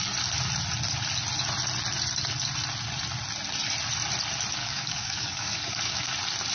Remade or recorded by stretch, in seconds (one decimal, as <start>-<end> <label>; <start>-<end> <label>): 0.0-4.6 recorded; 4.6-6.1 remade; 6.1-6.5 recorded